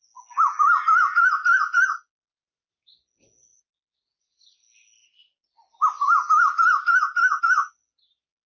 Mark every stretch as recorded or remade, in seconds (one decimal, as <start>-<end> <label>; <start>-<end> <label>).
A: 0.0-8.5 recorded